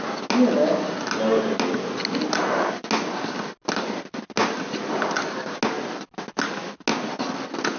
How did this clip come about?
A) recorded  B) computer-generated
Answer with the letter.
A